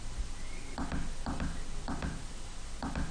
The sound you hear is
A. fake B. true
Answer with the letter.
B